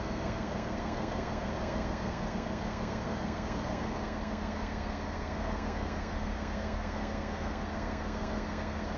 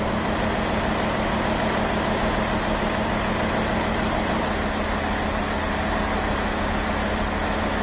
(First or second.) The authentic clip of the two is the second